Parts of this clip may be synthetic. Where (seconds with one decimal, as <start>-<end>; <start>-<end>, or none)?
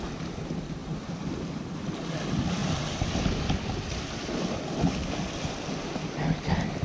none